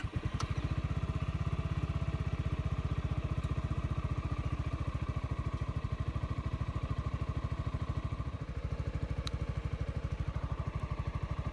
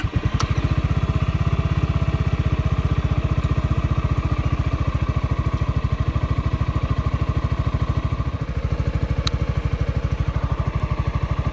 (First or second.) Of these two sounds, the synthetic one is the first